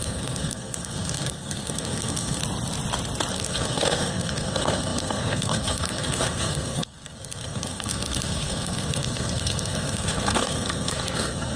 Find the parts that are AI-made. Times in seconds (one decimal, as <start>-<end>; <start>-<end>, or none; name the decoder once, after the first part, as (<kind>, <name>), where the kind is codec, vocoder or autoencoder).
0.0-2.4 (codec, SNAC); 3.3-11.6